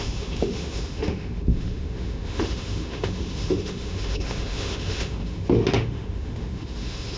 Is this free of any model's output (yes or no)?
no